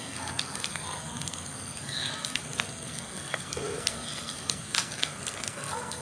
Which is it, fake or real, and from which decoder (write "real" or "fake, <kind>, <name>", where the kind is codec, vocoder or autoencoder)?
fake, codec, SNAC